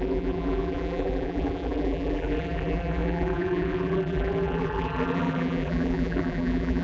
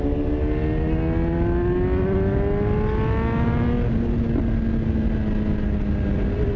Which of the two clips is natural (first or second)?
second